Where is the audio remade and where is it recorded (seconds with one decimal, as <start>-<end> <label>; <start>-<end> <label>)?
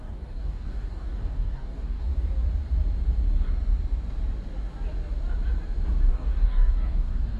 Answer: 0.0-2.1 remade; 2.1-6.1 recorded; 6.1-7.4 remade